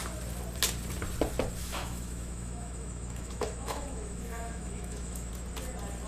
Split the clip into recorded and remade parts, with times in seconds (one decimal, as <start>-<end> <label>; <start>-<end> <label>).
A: 0.0-1.6 recorded; 1.6-5.3 remade; 5.3-6.1 recorded